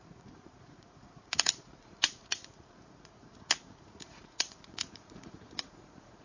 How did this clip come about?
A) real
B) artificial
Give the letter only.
B